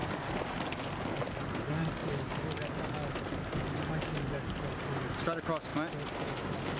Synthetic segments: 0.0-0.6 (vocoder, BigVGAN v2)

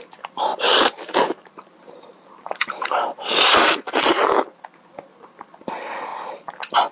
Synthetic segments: 0.5-4.6 (vocoder, BigVGAN v2)

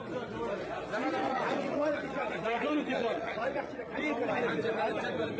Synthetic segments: 1.2-4.0 (vocoder, Vocos)

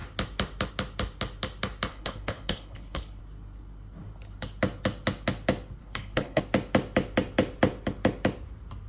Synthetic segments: 1.9-3.2 (codec, HILCodec); 5.8-6.4